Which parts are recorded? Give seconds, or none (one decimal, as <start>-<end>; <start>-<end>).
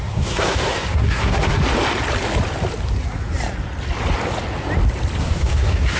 1.6-5.2